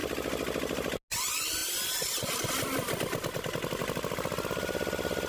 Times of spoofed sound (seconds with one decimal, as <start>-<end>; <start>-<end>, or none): none